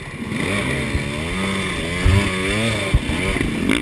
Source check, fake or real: real